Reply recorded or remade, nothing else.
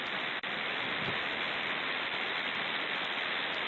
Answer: recorded